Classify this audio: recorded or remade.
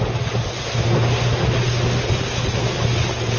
recorded